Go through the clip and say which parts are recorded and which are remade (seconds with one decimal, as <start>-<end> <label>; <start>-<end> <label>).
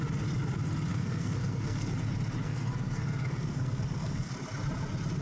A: 0.0-0.9 recorded; 0.9-1.9 remade; 1.9-2.4 recorded; 2.4-4.3 remade; 4.3-5.2 recorded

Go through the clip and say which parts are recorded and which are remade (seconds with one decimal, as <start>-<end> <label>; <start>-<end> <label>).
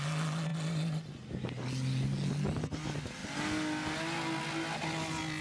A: 0.0-5.4 recorded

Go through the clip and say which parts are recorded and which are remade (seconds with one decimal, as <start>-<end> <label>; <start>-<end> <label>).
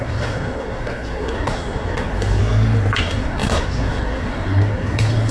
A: 0.0-2.4 remade; 2.4-3.0 recorded; 3.0-5.3 remade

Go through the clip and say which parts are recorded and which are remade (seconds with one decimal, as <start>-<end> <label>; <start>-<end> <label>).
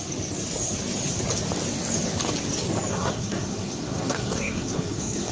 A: 0.0-2.9 recorded; 2.9-5.3 remade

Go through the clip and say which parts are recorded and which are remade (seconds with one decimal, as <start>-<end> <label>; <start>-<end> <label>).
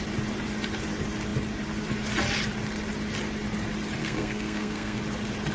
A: 0.0-4.0 recorded; 4.0-5.0 remade; 5.0-5.5 recorded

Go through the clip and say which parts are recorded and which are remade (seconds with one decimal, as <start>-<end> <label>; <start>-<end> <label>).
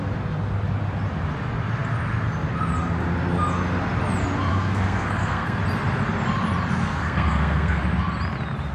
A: 0.0-4.5 recorded; 4.5-5.6 remade; 5.6-6.8 recorded; 6.8-7.8 remade; 7.8-8.7 recorded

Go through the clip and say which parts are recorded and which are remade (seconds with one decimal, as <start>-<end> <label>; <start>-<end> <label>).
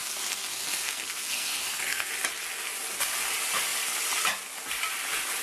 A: 0.0-2.1 remade; 2.1-5.4 recorded